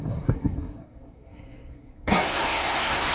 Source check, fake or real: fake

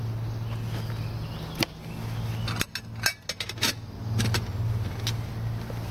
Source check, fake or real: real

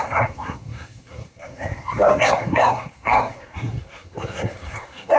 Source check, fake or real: fake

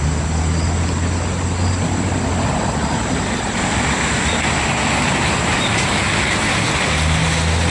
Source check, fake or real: real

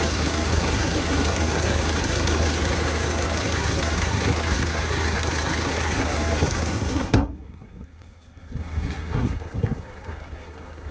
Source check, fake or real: fake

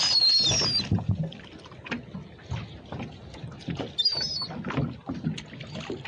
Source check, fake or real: real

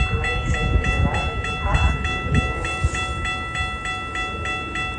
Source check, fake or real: real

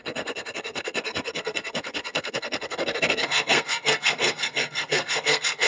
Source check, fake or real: fake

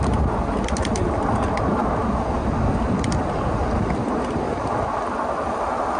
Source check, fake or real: real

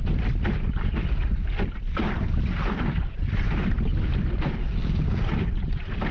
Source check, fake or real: real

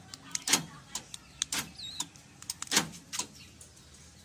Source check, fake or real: real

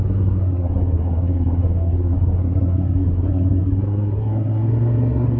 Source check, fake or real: fake